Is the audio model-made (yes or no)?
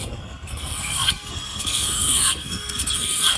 yes